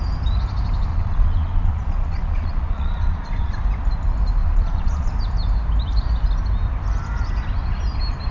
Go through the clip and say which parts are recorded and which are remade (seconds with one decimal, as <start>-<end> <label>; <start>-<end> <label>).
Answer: 0.0-0.9 recorded; 0.9-3.5 remade; 3.5-4.4 recorded; 4.4-5.1 remade; 5.1-8.3 recorded